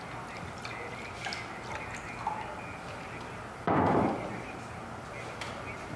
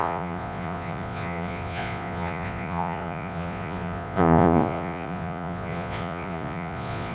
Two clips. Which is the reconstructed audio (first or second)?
second